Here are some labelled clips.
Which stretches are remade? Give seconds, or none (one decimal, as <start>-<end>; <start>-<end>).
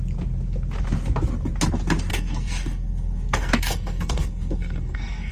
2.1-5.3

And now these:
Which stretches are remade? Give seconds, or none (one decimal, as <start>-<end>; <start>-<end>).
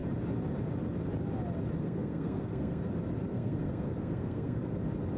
1.8-2.8; 3.3-4.7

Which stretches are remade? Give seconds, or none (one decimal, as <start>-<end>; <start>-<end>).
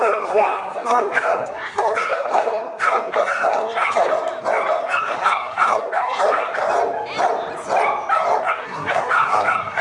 0.0-4.1; 4.8-6.6; 8.4-9.8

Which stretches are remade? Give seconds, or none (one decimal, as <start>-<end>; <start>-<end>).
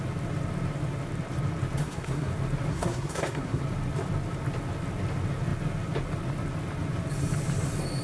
1.8-2.3; 2.7-3.6